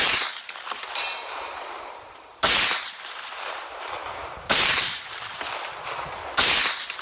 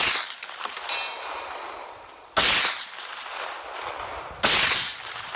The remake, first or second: first